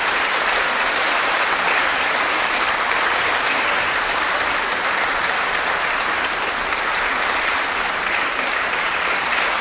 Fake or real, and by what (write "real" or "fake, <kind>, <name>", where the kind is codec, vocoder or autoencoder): fake, vocoder, BigVGAN v2